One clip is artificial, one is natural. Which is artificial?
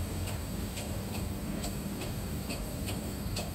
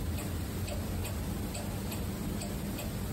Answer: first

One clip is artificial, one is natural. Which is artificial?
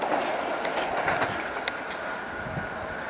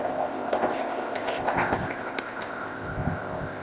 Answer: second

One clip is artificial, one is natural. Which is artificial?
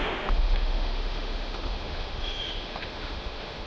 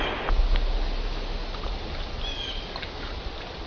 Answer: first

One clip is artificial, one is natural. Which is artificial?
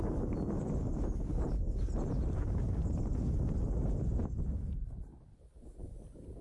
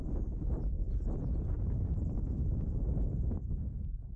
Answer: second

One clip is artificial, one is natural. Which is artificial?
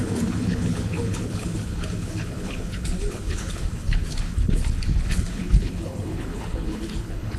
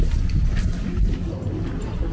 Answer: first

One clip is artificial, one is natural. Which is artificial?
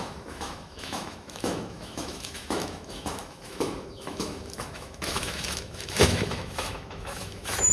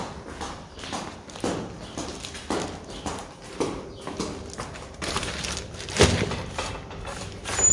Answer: first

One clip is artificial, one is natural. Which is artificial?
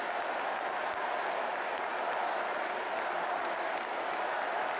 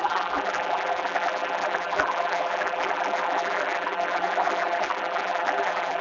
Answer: second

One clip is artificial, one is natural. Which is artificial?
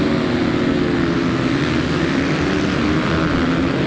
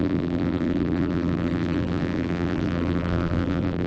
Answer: second